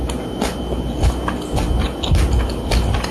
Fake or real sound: real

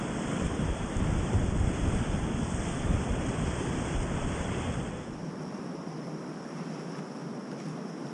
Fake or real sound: fake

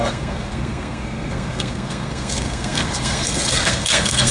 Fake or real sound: fake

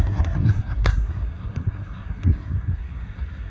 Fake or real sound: fake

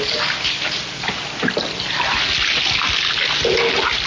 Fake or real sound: real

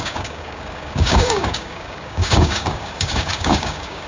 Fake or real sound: fake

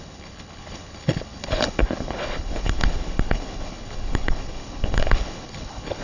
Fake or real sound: fake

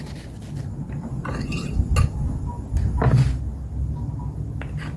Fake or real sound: real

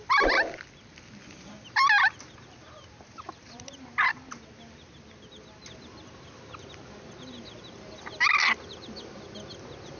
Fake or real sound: real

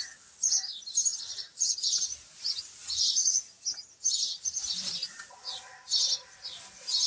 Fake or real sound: real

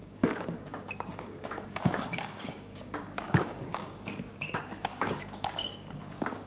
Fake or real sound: fake